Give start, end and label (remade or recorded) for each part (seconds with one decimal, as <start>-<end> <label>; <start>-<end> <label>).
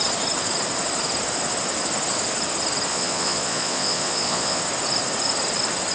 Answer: 0.0-2.9 recorded; 2.9-4.6 remade; 4.6-5.9 recorded